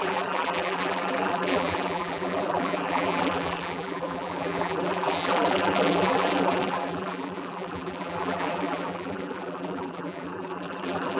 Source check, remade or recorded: remade